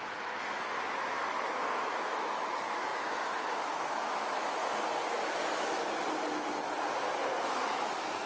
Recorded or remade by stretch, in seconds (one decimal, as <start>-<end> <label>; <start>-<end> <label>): 0.0-4.6 remade; 4.6-7.4 recorded; 7.4-8.3 remade